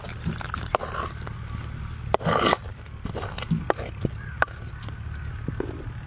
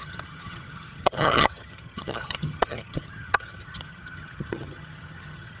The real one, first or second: first